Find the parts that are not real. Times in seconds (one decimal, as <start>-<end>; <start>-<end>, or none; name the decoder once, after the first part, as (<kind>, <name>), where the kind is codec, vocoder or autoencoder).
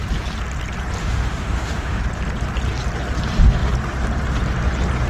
1.0-2.0 (autoencoder, DAC-VAE)